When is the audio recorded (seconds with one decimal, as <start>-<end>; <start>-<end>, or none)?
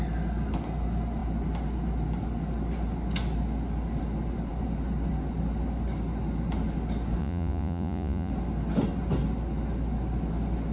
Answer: 0.0-7.2; 8.3-10.7